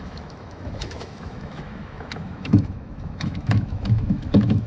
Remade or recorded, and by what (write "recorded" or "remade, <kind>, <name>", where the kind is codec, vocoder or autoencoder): remade, autoencoder, DAC-VAE